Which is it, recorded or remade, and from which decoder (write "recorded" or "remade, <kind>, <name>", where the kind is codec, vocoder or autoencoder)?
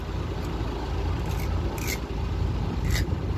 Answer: recorded